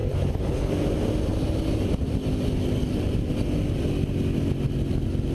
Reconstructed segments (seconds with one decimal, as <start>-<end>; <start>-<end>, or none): 0.0-0.7